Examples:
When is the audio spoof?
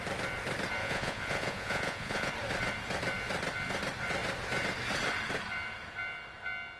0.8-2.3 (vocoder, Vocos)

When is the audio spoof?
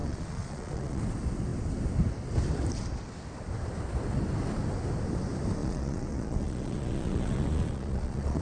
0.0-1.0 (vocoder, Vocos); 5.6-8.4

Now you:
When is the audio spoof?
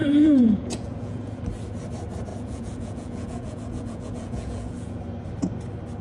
0.0-1.4 (vocoder, Vocos); 2.3-5.0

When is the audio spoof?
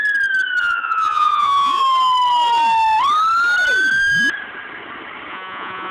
0.6-1.8 (vocoder, Vocos); 5.3-5.9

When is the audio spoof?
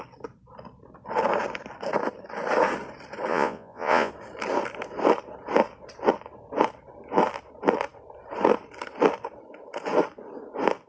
3.3-4.1 (vocoder, Vocos)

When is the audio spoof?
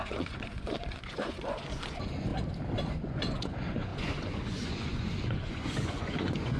0.0-2.3 (vocoder, Vocos); 2.9-6.6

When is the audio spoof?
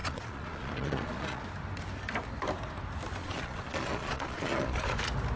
0.0-1.4 (vocoder, Vocos); 3.2-5.0